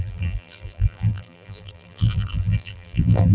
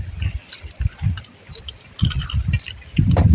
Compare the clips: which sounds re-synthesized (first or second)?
first